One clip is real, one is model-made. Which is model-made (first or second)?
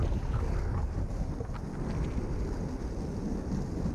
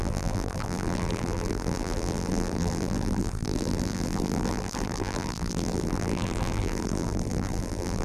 second